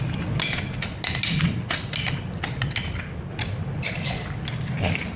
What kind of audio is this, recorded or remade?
recorded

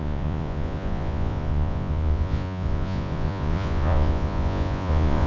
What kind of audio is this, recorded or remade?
remade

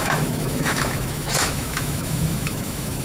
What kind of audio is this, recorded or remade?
remade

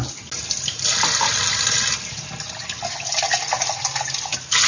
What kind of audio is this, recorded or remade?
recorded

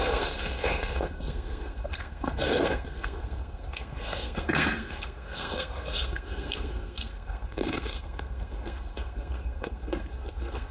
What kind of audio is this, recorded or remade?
remade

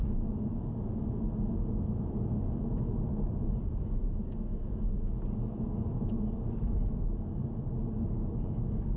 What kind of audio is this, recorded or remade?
recorded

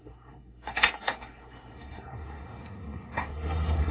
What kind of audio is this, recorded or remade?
remade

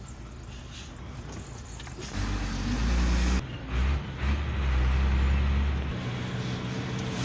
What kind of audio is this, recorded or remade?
recorded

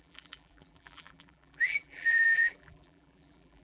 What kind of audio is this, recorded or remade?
remade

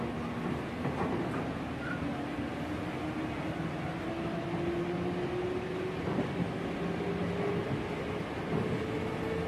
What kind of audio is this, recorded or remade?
recorded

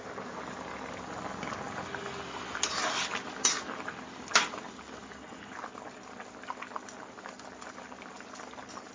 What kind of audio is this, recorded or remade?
recorded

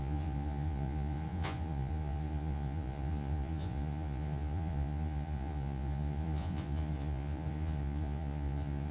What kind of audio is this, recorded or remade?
remade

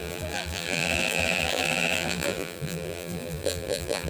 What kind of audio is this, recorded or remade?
remade